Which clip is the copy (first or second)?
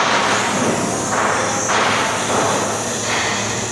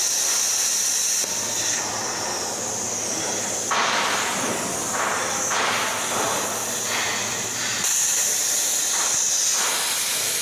second